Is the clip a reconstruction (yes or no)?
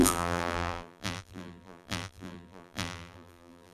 yes